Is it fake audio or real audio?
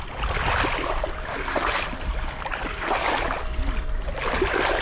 real